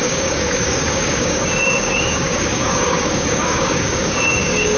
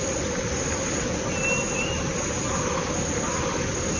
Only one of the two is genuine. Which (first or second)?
second